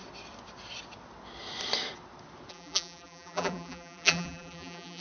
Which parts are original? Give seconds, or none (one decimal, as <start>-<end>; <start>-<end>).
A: 0.0-2.5